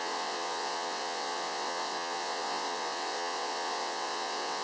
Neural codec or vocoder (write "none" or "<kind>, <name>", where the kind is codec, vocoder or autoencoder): vocoder, WaveNeXt